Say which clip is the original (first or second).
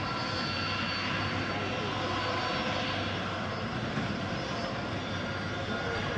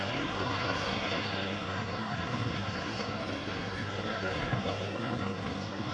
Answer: first